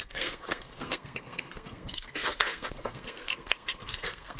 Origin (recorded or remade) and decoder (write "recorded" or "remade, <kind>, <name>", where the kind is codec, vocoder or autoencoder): remade, codec, SNAC